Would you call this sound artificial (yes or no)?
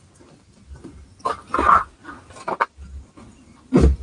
no